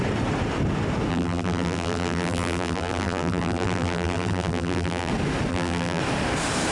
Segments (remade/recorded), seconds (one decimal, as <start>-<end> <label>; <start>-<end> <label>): 0.0-1.1 recorded; 1.1-5.1 remade; 5.1-5.5 recorded; 5.5-6.0 remade; 6.0-6.7 recorded